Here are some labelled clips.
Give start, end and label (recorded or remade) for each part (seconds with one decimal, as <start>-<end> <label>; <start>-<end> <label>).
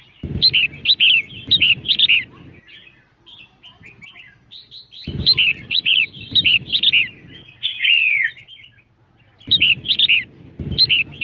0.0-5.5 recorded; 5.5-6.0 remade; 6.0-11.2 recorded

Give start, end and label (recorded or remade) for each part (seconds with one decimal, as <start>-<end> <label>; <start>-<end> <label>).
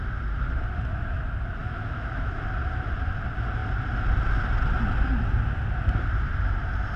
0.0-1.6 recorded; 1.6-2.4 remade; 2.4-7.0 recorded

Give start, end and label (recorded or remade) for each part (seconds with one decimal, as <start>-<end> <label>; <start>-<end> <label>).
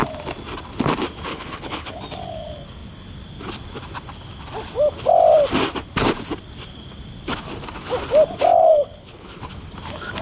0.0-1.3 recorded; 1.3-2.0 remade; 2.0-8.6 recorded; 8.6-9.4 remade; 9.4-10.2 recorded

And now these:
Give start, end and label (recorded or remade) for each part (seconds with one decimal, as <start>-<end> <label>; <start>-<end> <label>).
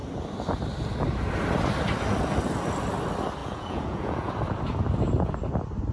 0.0-3.4 recorded; 3.4-4.3 remade; 4.3-5.9 recorded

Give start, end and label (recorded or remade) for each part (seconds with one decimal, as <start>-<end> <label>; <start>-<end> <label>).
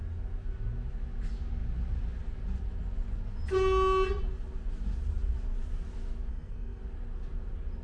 0.0-6.3 recorded; 6.3-6.8 remade; 6.8-7.8 recorded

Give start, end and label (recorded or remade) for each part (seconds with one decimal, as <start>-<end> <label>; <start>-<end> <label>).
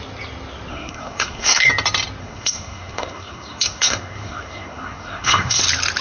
0.0-0.7 recorded; 0.7-1.7 remade; 1.7-2.2 recorded; 2.2-5.6 remade; 5.6-6.0 recorded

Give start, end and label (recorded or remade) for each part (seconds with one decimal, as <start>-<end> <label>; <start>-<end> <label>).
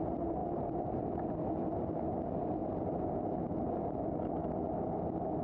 0.0-5.4 recorded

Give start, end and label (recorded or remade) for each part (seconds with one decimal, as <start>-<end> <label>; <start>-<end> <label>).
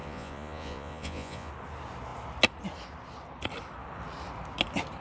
0.0-1.5 remade; 1.5-5.0 recorded